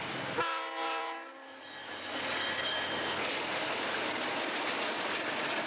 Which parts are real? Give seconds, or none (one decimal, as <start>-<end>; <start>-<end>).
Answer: 0.0-5.7